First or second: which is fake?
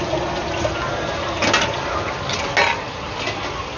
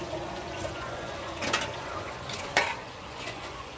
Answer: second